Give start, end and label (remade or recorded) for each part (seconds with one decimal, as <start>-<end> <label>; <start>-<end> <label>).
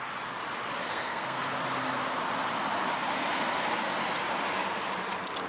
0.0-0.9 recorded; 0.9-1.4 remade; 1.4-5.5 recorded